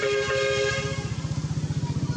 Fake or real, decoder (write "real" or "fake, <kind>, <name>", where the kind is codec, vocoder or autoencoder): real